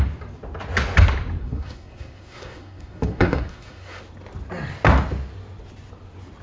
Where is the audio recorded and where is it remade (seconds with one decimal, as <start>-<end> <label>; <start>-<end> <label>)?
0.0-1.4 recorded; 1.4-4.0 remade; 4.0-6.4 recorded